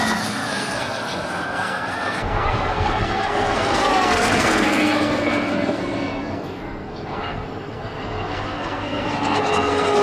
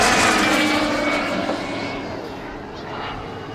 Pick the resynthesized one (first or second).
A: first